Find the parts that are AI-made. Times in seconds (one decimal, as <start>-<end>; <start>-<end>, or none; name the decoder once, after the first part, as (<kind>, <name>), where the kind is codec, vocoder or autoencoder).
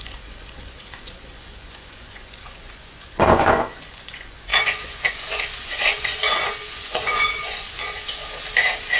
0.0-8.2 (vocoder, Vocos)